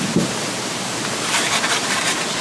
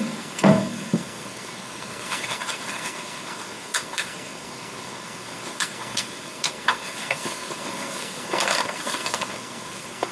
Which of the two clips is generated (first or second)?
second